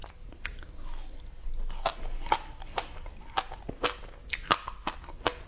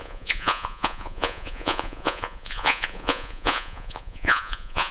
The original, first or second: first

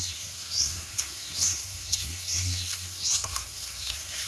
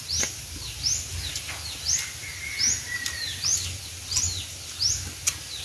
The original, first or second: second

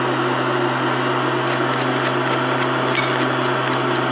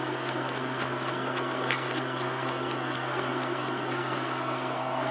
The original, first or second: first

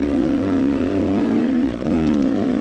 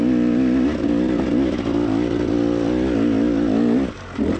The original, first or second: second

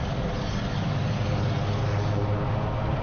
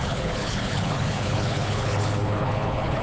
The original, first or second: first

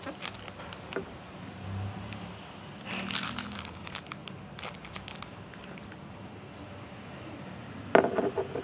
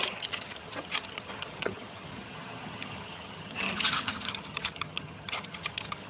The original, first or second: first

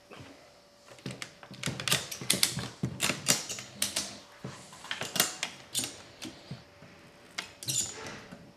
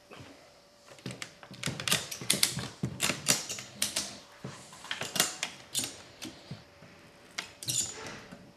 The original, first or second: first